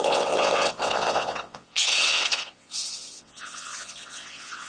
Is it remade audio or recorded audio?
remade